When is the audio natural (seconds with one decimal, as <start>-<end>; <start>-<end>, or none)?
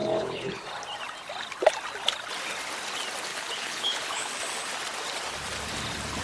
0.6-3.3; 4.3-6.2